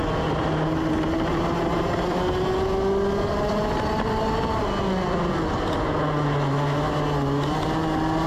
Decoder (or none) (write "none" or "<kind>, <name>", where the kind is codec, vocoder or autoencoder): none